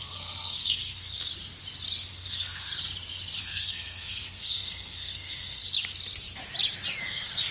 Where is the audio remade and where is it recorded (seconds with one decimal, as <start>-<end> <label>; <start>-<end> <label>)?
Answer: 0.0-1.3 remade; 1.3-2.1 recorded; 2.1-2.7 remade; 2.7-3.4 recorded; 3.4-5.6 remade; 5.6-7.0 recorded; 7.0-7.5 remade